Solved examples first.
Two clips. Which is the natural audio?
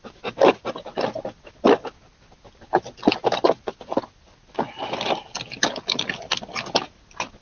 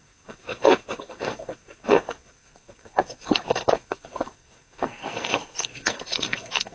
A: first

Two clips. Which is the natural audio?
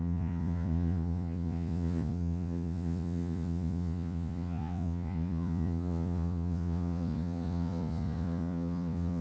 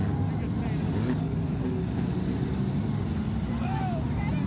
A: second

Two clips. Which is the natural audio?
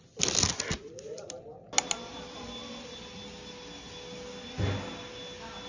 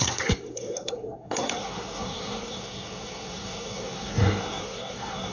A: first